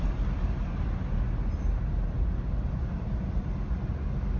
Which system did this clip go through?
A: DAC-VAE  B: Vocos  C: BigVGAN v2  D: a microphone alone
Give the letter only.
D